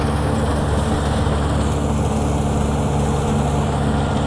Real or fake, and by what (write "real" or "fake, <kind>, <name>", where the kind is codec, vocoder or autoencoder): real